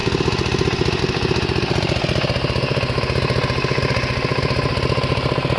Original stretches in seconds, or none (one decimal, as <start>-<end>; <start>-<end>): 0.0-5.6